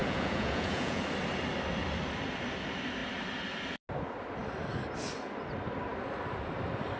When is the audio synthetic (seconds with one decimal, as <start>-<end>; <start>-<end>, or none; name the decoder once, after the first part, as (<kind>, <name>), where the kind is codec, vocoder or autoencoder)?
0.0-1.0 (vocoder, Vocos)